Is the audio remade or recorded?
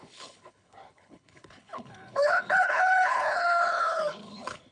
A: remade